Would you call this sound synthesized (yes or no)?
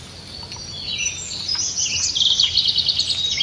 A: no